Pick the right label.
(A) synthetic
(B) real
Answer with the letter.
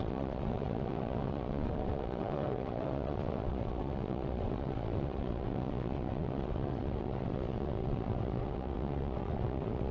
A